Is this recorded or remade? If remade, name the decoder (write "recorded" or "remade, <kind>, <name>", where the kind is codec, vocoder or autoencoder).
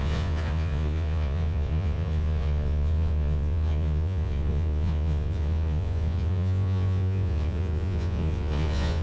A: remade, vocoder, Vocos